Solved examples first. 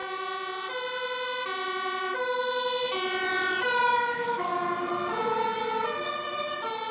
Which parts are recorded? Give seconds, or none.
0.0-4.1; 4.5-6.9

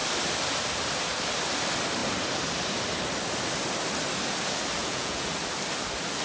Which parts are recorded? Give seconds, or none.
0.0-4.8; 5.3-6.2